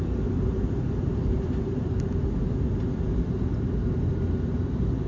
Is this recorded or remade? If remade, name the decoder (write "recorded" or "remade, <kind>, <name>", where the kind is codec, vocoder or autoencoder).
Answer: recorded